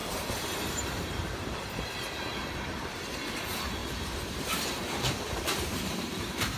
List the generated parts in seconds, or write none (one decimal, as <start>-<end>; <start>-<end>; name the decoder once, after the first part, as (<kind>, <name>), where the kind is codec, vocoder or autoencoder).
0.0-1.9 (vocoder, BigVGAN v2); 3.8-6.6